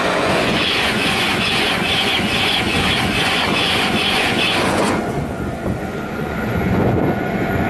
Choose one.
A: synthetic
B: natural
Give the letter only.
A